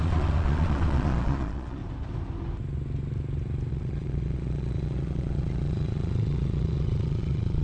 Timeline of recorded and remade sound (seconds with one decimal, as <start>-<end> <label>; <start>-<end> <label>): 0.0-1.8 remade; 1.8-3.7 recorded; 3.7-7.6 remade